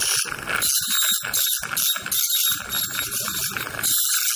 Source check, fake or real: real